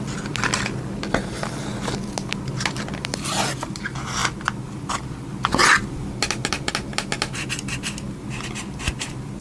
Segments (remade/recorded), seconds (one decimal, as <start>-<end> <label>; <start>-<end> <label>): 0.0-9.4 recorded